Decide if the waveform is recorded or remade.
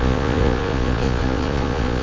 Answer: remade